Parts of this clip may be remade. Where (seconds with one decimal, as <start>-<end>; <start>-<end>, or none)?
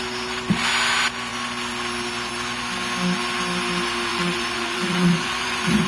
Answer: 4.1-5.9